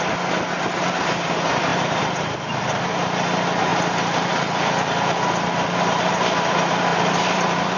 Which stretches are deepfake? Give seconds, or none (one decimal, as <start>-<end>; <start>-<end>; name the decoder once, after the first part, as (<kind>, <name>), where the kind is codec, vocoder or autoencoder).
1.7-2.4 (vocoder, BigVGAN v2); 6.9-7.8